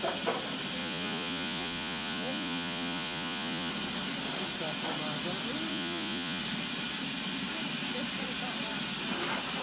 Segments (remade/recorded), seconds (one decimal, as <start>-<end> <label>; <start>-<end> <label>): 0.0-0.8 recorded; 0.8-3.7 remade; 3.7-5.7 recorded; 5.7-6.4 remade; 6.4-9.6 recorded